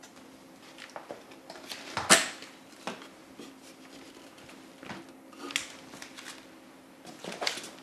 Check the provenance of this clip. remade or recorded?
recorded